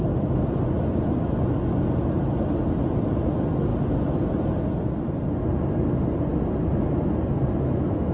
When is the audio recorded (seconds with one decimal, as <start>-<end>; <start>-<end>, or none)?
0.0-8.1

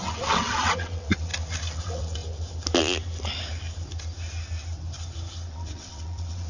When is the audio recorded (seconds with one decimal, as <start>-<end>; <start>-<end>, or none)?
1.3-1.8; 2.2-5.5

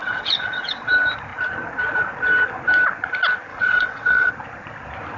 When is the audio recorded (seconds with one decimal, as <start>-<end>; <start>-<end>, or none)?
0.9-3.5; 4.3-5.2

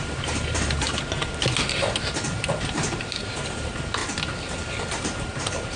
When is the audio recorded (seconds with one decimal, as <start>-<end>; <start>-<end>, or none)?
0.9-2.3; 4.0-4.9

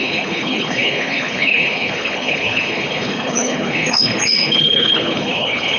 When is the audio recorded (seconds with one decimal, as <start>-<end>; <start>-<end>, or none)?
none

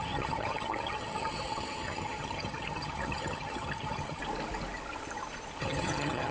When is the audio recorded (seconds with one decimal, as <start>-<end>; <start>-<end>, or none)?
4.2-5.6

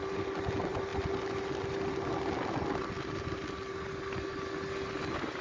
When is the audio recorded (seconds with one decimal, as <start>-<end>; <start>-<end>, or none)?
0.0-5.4